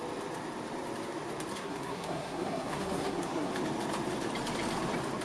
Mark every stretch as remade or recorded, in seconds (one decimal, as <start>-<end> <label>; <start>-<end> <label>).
0.0-1.5 recorded; 1.5-3.5 remade; 3.5-5.2 recorded